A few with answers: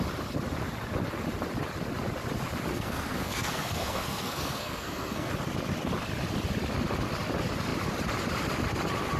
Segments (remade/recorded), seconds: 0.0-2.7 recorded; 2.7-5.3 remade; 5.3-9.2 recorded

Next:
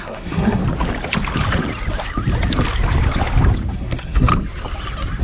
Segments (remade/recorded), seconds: 0.0-0.6 remade; 0.6-3.7 recorded; 3.7-4.3 remade; 4.3-5.2 recorded

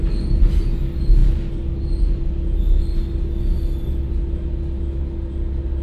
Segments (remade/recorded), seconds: 0.0-5.8 recorded

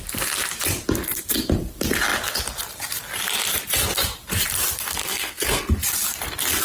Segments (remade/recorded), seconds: 0.0-5.0 recorded; 5.0-5.6 remade; 5.6-6.6 recorded